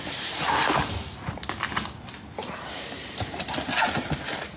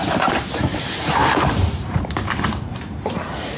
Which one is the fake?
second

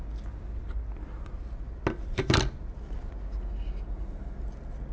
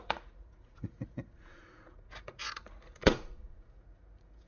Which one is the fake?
second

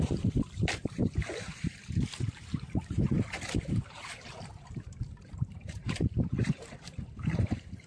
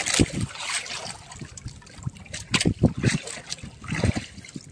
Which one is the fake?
first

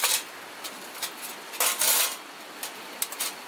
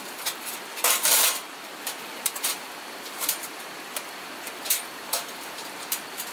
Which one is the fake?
second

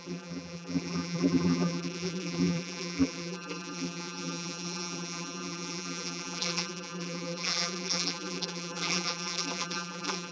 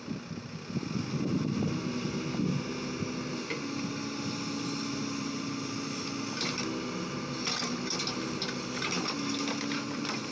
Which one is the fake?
first